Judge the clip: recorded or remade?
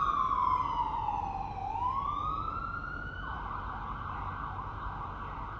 recorded